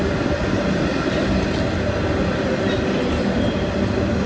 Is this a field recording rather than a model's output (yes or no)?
yes